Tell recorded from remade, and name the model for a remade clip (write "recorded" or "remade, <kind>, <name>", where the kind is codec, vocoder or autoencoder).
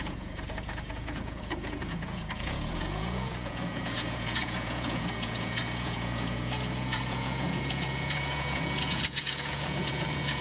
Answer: remade, vocoder, Vocos